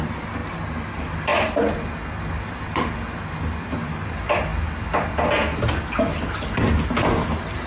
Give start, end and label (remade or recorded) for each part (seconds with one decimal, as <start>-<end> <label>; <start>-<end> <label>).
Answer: 0.0-0.4 remade; 0.4-0.9 recorded; 0.9-1.3 remade; 1.3-2.3 recorded; 2.3-7.7 remade